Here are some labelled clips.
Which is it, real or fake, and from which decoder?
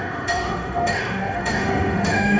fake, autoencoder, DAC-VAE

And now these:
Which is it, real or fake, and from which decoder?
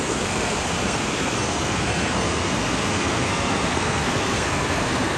fake, codec, SNAC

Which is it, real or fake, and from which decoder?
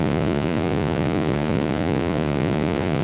fake, vocoder, Vocos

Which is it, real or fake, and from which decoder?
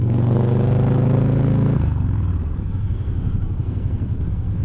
fake, codec, SNAC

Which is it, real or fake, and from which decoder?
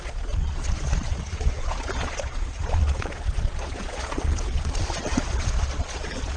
fake, vocoder, Vocos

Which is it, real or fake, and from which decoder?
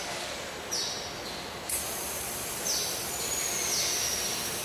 real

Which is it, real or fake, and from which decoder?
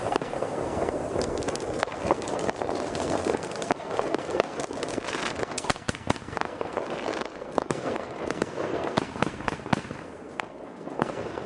fake, codec, SNAC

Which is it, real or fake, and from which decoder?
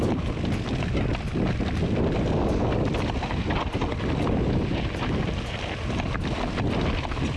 real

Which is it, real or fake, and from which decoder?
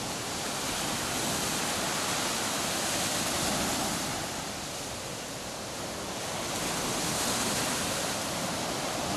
real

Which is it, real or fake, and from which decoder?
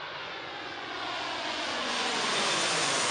fake, vocoder, Vocos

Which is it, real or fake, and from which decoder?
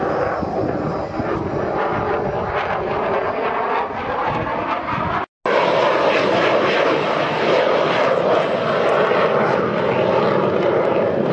real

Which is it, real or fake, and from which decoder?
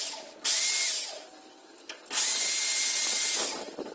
real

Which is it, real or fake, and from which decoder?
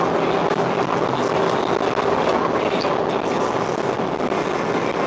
real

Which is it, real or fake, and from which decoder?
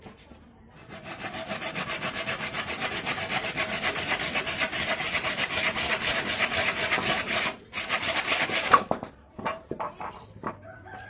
real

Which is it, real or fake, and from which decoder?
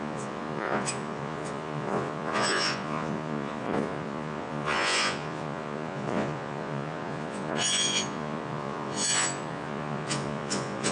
fake, vocoder, Vocos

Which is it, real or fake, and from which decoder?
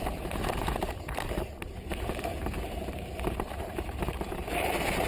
fake, vocoder, BigVGAN v2